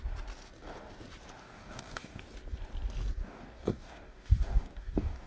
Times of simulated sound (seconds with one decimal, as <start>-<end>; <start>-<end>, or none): 1.4-2.2; 3.2-5.3